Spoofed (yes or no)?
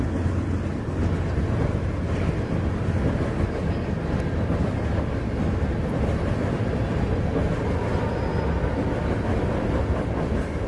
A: no